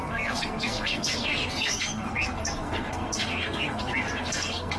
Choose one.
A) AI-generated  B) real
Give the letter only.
A